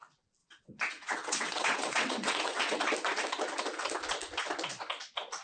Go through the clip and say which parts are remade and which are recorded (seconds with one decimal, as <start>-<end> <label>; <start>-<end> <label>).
0.0-0.4 recorded; 0.4-2.8 remade; 2.8-5.4 recorded